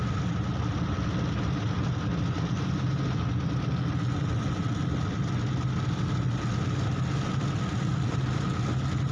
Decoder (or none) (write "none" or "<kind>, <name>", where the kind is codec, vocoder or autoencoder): none